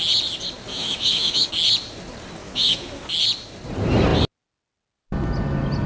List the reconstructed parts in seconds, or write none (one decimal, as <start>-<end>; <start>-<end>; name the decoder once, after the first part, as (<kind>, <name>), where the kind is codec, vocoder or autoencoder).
0.7-1.5 (autoencoder, DAC-VAE); 2.4-3.0

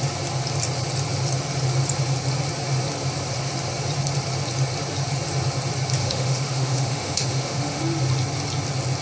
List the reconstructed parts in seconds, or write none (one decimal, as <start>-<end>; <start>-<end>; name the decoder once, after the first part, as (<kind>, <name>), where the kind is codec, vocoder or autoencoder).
6.0-7.8 (autoencoder, DAC-VAE)